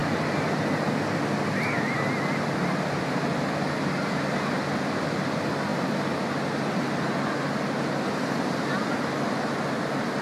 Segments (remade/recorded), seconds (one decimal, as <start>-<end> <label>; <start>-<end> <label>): 0.0-10.2 recorded